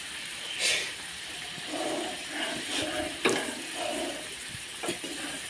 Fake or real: fake